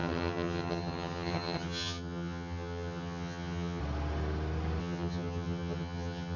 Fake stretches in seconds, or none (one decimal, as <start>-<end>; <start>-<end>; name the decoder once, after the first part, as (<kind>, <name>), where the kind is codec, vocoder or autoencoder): 0.0-3.8 (vocoder, HiFi-GAN); 4.8-6.4